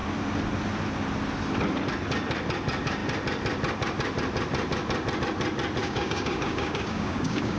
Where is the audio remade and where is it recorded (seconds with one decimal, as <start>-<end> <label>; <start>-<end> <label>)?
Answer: 0.0-5.8 recorded; 5.8-7.6 remade

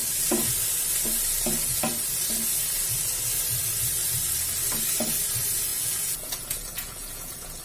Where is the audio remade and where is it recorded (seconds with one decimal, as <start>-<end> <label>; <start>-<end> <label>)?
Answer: 0.0-5.7 recorded; 5.7-7.6 remade

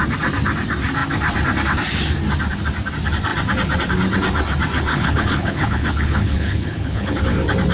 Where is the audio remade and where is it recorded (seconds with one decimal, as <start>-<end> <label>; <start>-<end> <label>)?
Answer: 0.0-4.9 recorded; 4.9-7.2 remade; 7.2-7.7 recorded

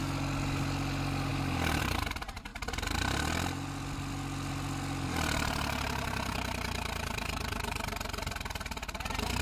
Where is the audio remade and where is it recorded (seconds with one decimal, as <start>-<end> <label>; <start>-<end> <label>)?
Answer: 0.0-9.4 recorded

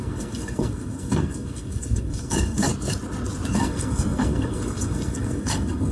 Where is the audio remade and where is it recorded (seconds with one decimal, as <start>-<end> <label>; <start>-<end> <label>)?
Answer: 0.0-2.7 remade; 2.7-3.5 recorded; 3.5-5.9 remade

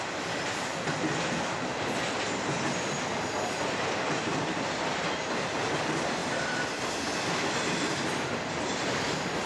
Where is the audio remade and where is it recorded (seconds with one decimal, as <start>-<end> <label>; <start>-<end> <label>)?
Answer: 0.0-9.5 recorded

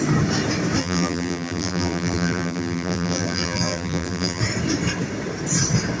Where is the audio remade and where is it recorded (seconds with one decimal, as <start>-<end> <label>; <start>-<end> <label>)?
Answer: 0.0-0.8 recorded; 0.8-4.4 remade; 4.4-6.0 recorded